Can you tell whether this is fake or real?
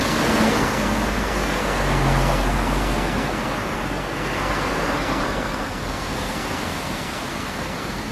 fake